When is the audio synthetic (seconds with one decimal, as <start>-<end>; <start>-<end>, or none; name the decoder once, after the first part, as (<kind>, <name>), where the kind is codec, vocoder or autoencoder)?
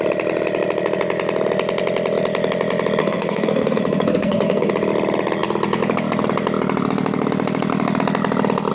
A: 3.0-4.7 (codec, SNAC)